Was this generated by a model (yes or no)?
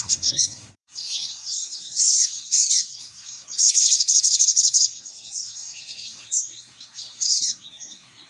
yes